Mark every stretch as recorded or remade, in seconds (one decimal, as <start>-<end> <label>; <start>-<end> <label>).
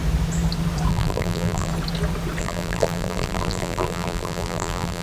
0.0-0.9 recorded; 0.9-1.7 remade; 1.7-2.4 recorded; 2.4-5.0 remade